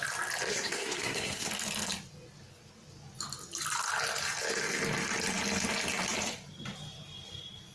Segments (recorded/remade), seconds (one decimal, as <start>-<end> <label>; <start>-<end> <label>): 0.0-0.5 recorded; 0.5-1.5 remade; 1.5-7.7 recorded